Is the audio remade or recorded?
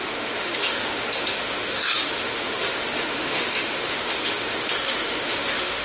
remade